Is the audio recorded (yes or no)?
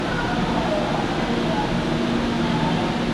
yes